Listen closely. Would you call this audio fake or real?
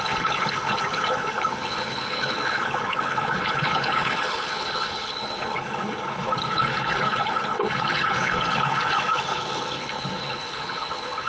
fake